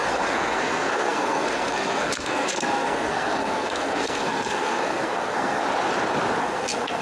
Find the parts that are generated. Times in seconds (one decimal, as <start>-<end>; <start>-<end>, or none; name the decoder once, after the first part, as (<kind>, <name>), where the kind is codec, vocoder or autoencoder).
0.0-5.6 (codec, SNAC); 6.4-7.0